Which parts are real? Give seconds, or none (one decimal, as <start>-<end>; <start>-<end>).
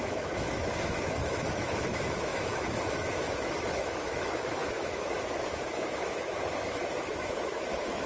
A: none